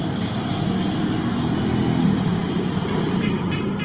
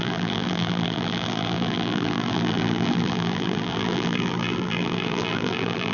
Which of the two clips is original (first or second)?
first